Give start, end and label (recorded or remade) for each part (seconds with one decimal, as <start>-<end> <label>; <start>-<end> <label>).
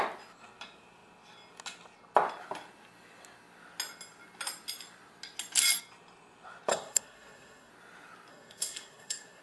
0.0-6.7 recorded; 6.7-7.7 remade; 7.7-8.3 recorded; 8.3-9.4 remade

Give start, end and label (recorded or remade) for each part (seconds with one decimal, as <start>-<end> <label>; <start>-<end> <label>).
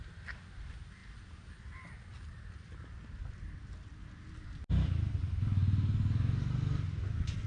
0.0-7.5 recorded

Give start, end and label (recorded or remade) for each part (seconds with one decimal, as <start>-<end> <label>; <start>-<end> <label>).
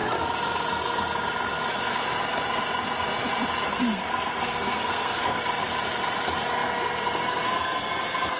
0.0-3.7 recorded; 3.7-5.4 remade; 5.4-8.4 recorded